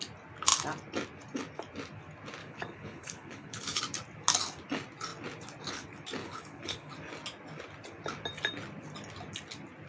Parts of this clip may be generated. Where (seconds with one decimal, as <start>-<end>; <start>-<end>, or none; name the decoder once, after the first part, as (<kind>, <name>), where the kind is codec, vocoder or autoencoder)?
2.4-3.8 (codec, HILCodec); 6.2-6.9